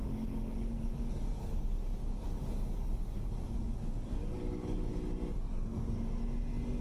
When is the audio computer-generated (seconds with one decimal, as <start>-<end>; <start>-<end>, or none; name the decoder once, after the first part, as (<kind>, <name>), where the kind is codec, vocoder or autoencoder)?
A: 0.0-4.9 (codec, DAC)